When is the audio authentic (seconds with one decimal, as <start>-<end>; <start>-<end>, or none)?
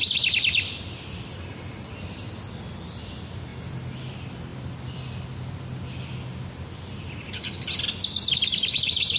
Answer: 0.0-9.2